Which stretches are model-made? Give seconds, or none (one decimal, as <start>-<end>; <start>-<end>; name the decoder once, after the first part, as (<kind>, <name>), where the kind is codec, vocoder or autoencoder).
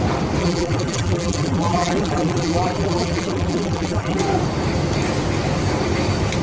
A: 0.4-4.2 (vocoder, BigVGAN v2)